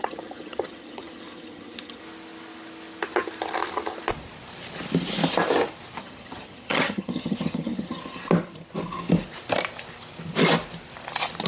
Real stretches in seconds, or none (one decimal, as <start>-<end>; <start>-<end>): 2.0-6.0; 8.0-11.5